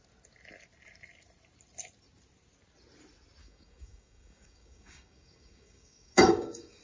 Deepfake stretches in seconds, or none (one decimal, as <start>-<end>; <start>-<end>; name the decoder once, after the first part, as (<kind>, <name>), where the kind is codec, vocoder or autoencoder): 3.4-6.8 (codec, DAC)